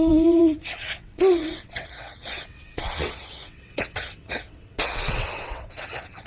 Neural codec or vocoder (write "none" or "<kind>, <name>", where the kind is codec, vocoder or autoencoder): vocoder, WaveNeXt